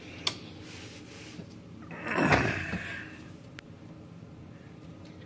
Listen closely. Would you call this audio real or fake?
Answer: real